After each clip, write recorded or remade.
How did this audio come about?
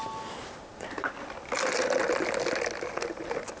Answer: recorded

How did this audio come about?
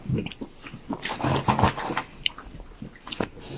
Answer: recorded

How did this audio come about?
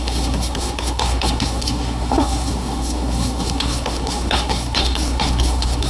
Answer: remade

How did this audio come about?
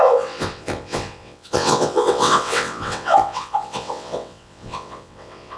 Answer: remade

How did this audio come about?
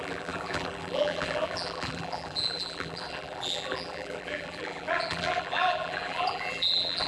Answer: remade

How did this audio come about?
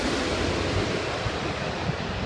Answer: recorded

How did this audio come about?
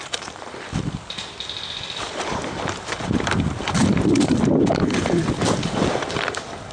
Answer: remade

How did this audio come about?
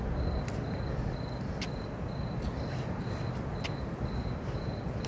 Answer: recorded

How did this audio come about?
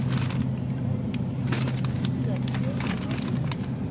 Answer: recorded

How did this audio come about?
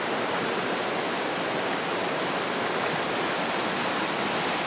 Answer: recorded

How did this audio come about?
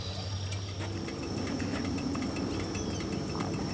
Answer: recorded